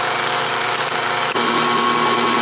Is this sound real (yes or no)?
yes